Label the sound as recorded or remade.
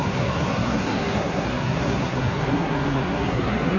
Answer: remade